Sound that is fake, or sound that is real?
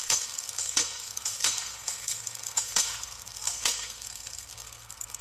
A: fake